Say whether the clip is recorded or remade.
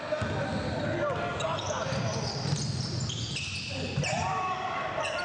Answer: recorded